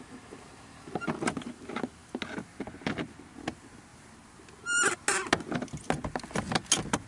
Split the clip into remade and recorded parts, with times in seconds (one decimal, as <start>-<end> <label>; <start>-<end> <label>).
0.0-7.1 recorded